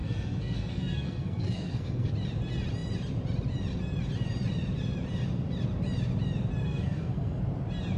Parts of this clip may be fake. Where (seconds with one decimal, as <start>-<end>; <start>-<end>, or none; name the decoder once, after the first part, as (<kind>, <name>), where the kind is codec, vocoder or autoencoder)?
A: 0.0-2.1 (codec, SNAC); 6.6-7.4